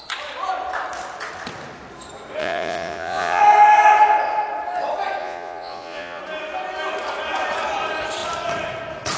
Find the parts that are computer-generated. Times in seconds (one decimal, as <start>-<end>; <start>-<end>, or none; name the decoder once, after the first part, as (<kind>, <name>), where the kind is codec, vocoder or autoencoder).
2.4-3.4 (vocoder, Vocos); 5.2-6.2